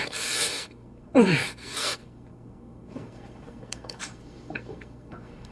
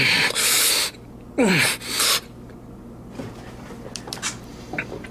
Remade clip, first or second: first